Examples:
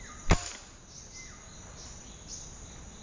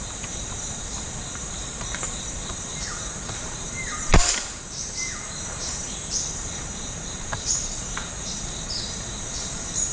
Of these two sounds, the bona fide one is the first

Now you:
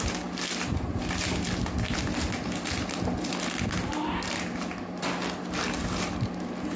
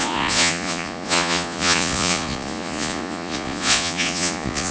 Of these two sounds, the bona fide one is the first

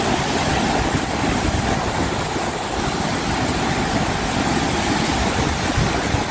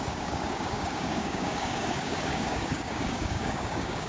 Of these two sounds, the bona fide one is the first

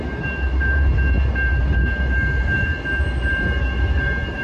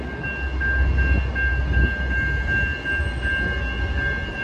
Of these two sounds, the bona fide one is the second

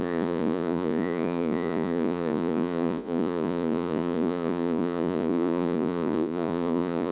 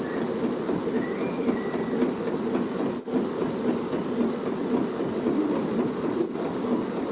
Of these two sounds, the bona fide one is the second